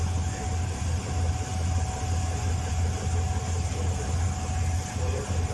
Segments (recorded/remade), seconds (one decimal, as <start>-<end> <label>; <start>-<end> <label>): 0.0-5.5 recorded